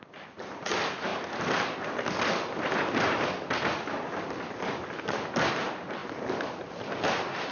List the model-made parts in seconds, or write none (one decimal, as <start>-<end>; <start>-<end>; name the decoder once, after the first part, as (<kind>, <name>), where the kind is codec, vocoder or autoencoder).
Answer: 0.0-1.1 (vocoder, BigVGAN v2); 5.5-7.5